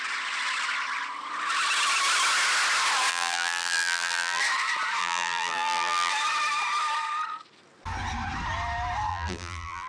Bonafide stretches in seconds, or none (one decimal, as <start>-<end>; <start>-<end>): 0.0-3.1; 4.4-5.0; 6.1-9.1